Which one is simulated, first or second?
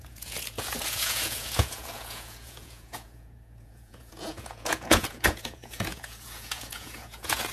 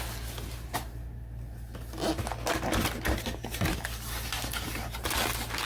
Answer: first